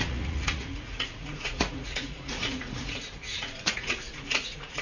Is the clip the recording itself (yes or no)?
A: no